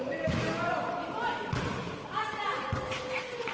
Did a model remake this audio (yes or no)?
no